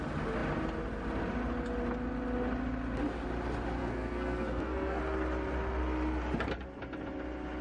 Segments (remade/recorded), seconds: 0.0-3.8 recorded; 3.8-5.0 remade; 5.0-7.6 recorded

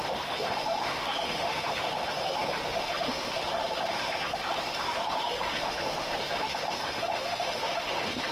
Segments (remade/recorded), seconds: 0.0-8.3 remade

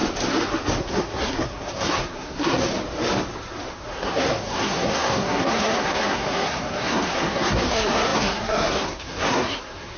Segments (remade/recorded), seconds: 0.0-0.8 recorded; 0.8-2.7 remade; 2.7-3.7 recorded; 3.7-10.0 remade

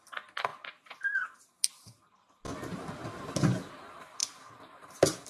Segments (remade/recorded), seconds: 0.0-5.3 recorded

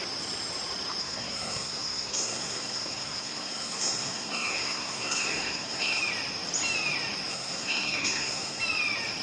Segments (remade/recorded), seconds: 0.0-1.0 recorded; 1.0-6.0 remade; 6.0-7.3 recorded; 7.3-8.6 remade; 8.6-9.2 recorded

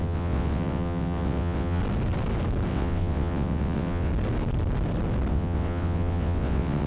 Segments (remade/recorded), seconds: 0.0-1.8 remade; 1.8-2.7 recorded; 2.7-4.1 remade; 4.1-5.3 recorded; 5.3-6.9 remade

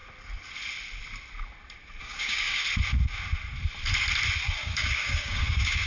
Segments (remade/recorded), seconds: 0.0-2.0 recorded; 2.0-2.6 remade; 2.6-4.6 recorded; 4.6-5.9 remade

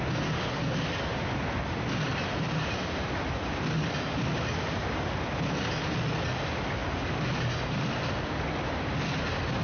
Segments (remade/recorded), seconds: 0.0-1.1 recorded; 1.1-3.1 remade; 3.1-6.8 recorded; 6.8-8.3 remade; 8.3-9.6 recorded